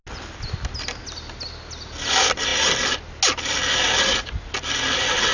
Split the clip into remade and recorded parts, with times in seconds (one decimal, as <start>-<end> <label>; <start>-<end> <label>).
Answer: 0.0-5.3 recorded